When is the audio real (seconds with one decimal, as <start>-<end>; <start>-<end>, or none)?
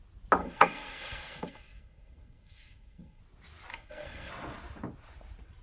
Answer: 0.0-0.4; 3.2-3.7; 4.3-5.6